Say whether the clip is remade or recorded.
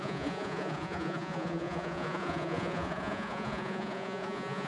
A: remade